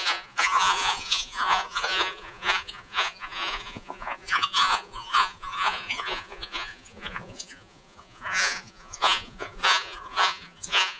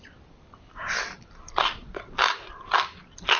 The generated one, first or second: first